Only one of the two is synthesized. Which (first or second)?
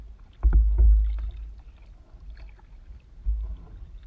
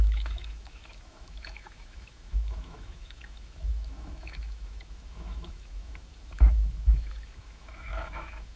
second